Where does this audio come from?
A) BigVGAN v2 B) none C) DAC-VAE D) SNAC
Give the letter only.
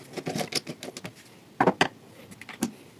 B